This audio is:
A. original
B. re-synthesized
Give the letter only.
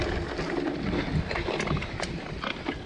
A